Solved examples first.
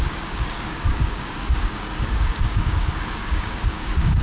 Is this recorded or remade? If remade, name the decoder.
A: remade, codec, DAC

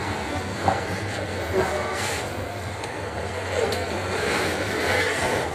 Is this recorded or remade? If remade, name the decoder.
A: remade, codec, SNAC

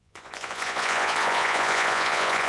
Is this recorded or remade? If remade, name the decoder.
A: remade, vocoder, Vocos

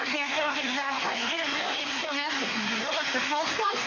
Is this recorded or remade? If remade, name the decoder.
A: remade, codec, SNAC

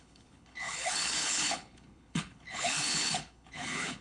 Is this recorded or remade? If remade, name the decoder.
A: remade, codec, HILCodec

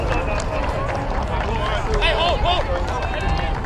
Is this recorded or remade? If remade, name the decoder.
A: recorded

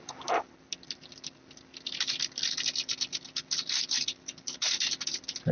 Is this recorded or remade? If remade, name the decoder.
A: recorded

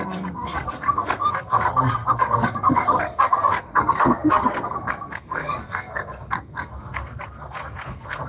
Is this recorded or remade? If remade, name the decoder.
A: remade, codec, SNAC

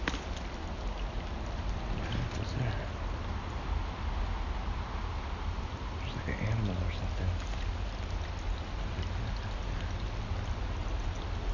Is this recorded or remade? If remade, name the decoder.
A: recorded